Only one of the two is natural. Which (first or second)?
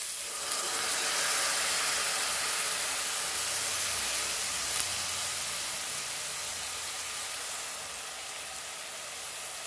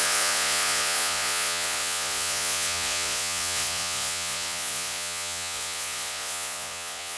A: first